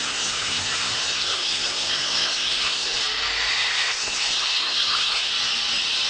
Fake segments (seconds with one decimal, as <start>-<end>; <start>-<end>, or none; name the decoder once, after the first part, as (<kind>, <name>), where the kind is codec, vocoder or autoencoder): 0.0-3.0 (codec, SNAC); 3.5-5.3